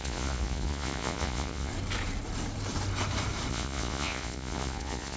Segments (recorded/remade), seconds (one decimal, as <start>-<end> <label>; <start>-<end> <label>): 0.0-1.7 remade; 1.7-3.5 recorded; 3.5-5.2 remade